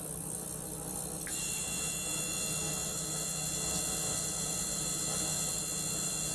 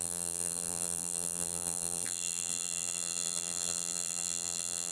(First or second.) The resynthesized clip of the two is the second